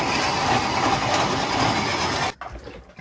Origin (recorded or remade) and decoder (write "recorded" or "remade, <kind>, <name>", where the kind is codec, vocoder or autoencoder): recorded